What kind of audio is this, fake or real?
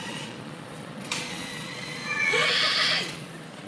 fake